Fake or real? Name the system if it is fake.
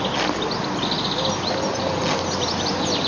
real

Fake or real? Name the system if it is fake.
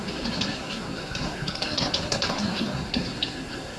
fake, codec, SNAC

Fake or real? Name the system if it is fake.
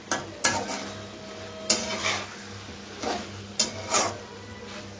real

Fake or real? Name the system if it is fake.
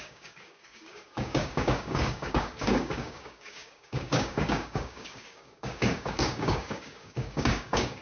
fake, codec, DAC